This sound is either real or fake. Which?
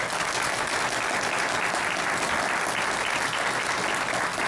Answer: real